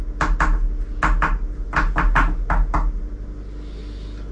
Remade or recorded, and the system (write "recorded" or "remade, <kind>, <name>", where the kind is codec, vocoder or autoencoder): recorded